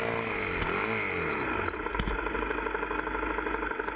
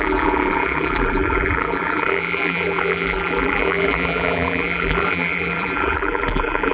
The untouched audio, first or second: first